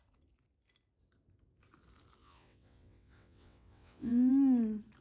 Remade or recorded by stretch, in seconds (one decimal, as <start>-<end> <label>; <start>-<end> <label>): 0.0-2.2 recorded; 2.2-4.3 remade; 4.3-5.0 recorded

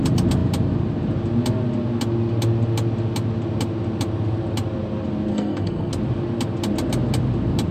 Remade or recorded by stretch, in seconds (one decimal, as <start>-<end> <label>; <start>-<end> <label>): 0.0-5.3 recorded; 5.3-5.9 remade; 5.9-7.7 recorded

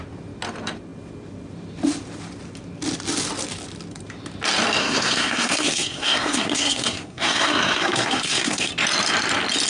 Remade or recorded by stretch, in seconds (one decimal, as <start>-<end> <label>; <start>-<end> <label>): 0.0-4.8 recorded; 4.8-8.7 remade; 8.7-9.7 recorded